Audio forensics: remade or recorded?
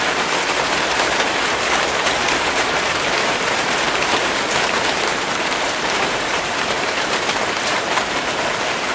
remade